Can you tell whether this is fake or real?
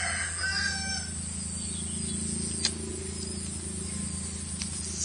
real